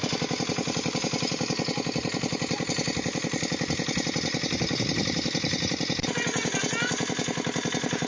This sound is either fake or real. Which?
real